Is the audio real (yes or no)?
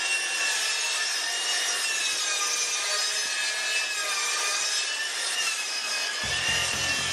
yes